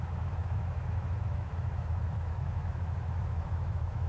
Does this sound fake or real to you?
fake